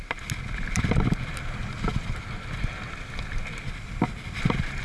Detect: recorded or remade recorded